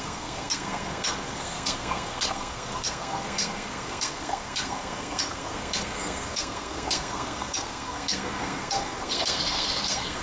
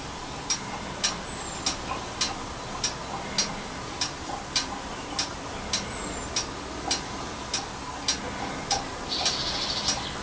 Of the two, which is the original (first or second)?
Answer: second